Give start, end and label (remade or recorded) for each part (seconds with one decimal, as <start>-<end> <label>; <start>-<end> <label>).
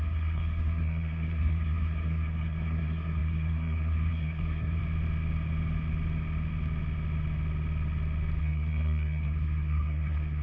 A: 0.0-4.8 remade; 4.8-8.4 recorded; 8.4-10.4 remade